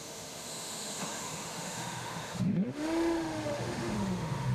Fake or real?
fake